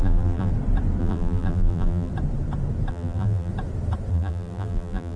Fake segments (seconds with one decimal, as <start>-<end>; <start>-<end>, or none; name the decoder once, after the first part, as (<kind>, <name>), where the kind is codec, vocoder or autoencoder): 0.0-0.5 (vocoder, BigVGAN v2); 1.0-2.1; 2.9-3.5; 4.1-5.2

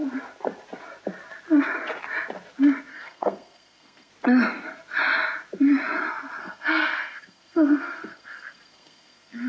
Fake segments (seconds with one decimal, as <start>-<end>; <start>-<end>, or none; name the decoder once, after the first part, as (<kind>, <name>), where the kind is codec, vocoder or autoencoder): 2.9-4.1 (codec, SNAC); 6.4-9.5

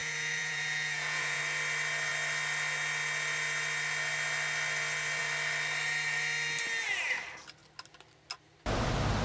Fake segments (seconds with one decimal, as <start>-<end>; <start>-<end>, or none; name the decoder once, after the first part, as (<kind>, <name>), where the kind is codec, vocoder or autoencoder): 0.0-1.4 (vocoder, Vocos)

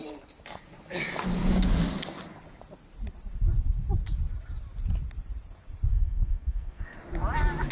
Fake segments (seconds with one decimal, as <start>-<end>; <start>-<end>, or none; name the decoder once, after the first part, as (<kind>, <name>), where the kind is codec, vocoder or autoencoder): 5.9-7.0 (codec, SNAC)